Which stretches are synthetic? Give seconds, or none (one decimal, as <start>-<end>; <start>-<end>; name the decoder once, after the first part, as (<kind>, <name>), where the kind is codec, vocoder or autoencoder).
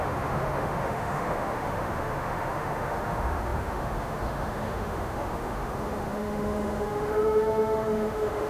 0.0-8.5 (autoencoder, DAC-VAE)